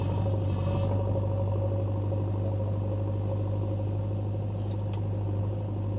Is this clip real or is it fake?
real